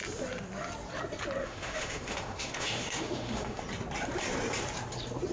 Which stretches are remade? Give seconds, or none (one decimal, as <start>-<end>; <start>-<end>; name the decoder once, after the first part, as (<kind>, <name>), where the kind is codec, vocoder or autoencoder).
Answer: 1.4-3.6 (autoencoder, DAC-VAE)